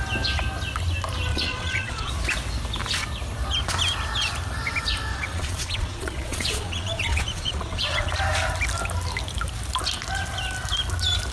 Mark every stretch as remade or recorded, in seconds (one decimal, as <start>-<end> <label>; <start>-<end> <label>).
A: 0.0-1.3 recorded; 1.3-2.1 remade; 2.1-5.1 recorded; 5.1-8.1 remade; 8.1-11.3 recorded